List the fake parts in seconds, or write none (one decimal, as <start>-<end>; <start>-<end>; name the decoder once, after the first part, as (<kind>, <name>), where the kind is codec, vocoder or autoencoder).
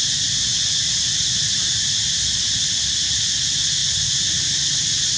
none